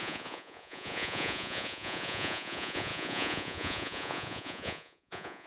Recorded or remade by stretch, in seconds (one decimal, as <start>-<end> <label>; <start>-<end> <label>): 0.0-5.5 remade